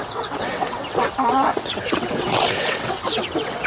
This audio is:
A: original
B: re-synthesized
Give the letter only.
B